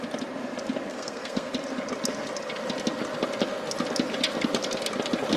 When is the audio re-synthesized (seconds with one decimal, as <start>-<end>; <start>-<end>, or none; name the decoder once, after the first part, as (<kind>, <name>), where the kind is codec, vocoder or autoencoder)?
0.9-1.5 (codec, SNAC)